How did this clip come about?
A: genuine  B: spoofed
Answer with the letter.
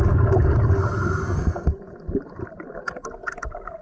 A